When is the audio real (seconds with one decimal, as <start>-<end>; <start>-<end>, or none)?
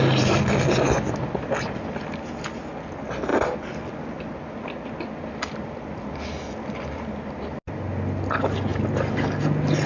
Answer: 0.0-9.9